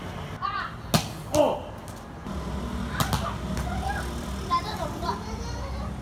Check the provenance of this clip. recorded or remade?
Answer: recorded